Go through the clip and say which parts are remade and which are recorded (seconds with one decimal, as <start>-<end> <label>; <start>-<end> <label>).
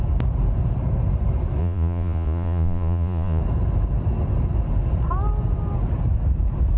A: 0.0-1.6 recorded; 1.6-3.4 remade; 3.4-6.8 recorded